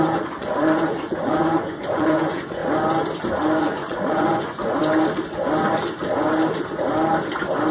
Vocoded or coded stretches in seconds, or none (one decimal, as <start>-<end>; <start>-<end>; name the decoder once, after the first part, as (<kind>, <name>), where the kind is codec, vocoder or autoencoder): 0.0-2.6 (vocoder, Vocos); 3.6-4.8